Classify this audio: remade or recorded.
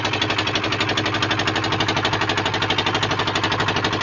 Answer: recorded